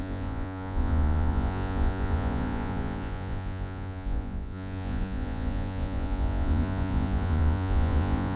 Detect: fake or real fake